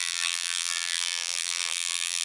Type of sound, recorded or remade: remade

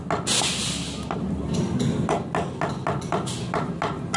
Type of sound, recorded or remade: recorded